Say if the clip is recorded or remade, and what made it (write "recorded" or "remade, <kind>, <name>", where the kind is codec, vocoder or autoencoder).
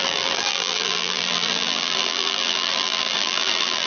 remade, vocoder, BigVGAN v2